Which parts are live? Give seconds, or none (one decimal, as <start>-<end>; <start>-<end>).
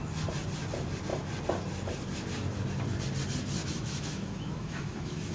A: 0.0-3.6